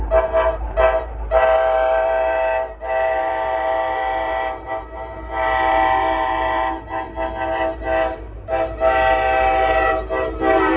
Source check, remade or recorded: remade